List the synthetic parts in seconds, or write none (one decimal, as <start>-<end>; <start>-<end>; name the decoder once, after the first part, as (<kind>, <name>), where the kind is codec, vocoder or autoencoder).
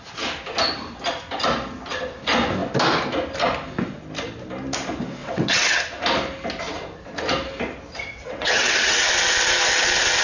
5.2-5.8 (vocoder, WaveNeXt); 8.0-9.1